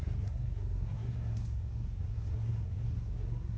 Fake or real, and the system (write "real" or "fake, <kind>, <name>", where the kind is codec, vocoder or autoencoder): fake, codec, SNAC